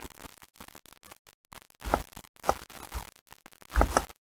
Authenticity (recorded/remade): recorded